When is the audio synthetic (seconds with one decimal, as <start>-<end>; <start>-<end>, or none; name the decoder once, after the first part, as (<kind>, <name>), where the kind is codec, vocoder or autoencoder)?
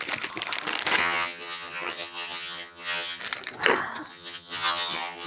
1.0-3.2 (vocoder, HiFi-GAN); 4.1-5.3